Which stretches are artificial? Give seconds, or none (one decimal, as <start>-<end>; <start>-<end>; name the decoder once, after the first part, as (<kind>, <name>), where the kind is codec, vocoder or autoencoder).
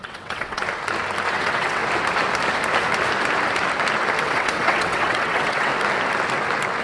0.0-0.6 (vocoder, WaveNeXt); 1.3-1.8; 4.2-5.7